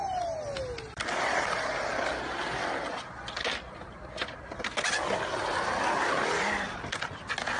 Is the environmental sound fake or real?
real